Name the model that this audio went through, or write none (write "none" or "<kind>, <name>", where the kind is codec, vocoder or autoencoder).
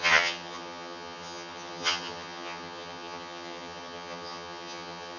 vocoder, HiFi-GAN